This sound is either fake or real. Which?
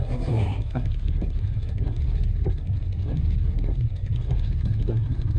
fake